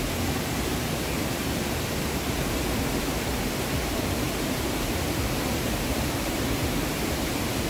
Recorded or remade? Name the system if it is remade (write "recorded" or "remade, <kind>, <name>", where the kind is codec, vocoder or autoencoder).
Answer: remade, vocoder, BigVGAN v2